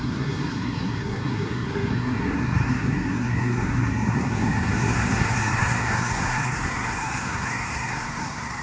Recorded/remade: remade